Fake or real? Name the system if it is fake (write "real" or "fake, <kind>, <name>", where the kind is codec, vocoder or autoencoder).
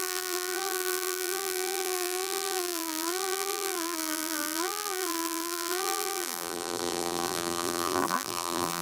fake, vocoder, BigVGAN v2